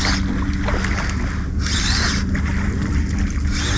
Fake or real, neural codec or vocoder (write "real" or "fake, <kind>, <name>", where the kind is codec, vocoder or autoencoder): real